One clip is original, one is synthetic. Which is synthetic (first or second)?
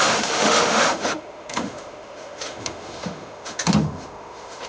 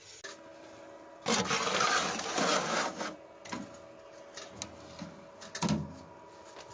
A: first